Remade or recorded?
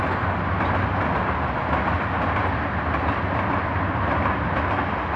recorded